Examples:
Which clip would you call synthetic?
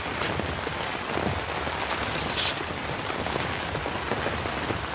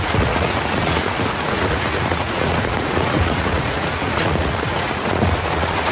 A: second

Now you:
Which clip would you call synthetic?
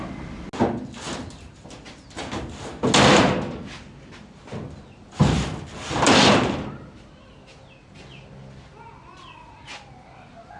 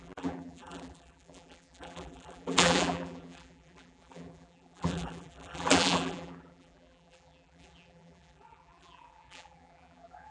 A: second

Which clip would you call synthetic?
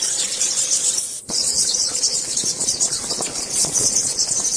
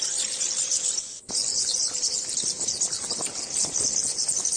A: first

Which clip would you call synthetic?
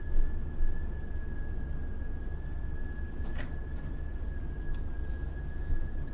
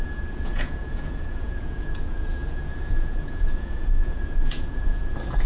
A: second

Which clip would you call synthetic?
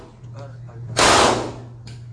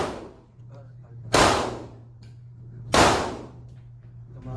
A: second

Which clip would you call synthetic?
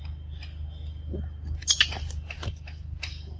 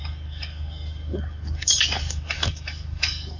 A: second